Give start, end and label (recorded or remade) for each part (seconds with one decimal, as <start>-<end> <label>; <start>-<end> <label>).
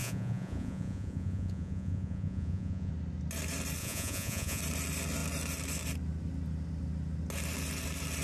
0.0-2.9 remade; 2.9-3.8 recorded; 3.8-4.6 remade; 4.6-8.2 recorded